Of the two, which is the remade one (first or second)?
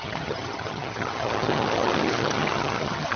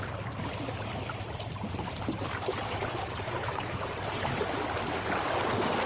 first